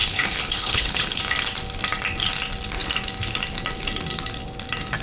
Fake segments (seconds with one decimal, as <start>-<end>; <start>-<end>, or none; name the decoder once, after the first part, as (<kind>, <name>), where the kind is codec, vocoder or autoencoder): 0.0-1.2 (codec, HILCodec)